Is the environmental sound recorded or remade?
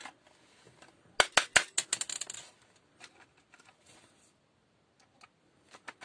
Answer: recorded